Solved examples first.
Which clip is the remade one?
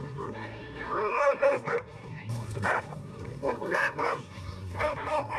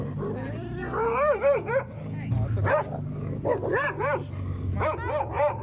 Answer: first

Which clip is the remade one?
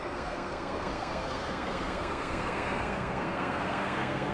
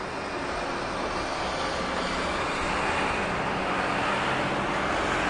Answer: first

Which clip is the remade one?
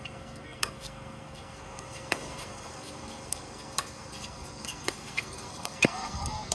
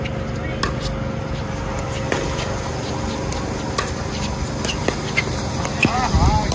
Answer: first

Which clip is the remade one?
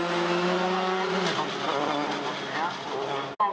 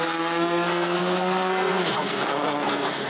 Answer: second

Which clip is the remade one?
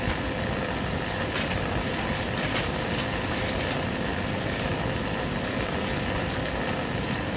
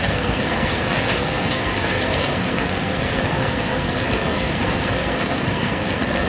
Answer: second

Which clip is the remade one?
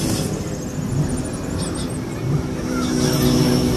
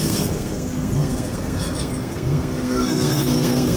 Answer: second